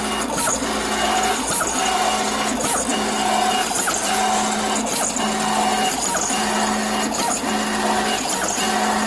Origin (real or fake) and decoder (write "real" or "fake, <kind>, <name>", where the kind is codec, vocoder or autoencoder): real